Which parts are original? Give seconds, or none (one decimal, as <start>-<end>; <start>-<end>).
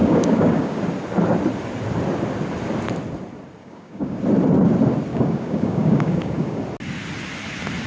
0.8-3.6; 4.2-5.1; 6.6-7.9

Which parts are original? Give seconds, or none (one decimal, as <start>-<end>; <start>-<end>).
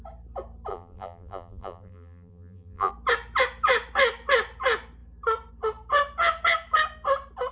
0.0-0.7; 2.9-7.5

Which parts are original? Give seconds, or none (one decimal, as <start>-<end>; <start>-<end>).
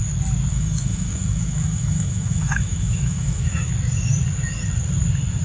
0.0-0.5; 3.7-5.4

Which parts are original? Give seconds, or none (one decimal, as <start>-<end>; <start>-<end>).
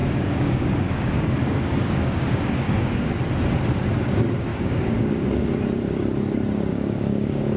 3.1-4.5; 5.5-6.7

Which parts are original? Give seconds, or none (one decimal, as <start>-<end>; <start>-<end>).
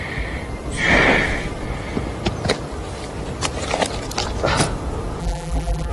0.0-5.2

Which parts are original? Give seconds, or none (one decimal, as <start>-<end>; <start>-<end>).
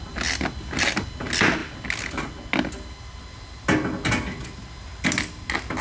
0.0-5.8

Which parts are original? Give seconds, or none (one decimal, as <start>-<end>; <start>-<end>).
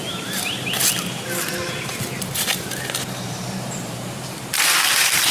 0.0-3.2